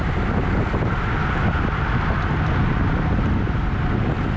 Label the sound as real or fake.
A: real